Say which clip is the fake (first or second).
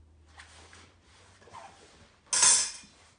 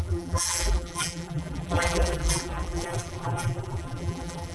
second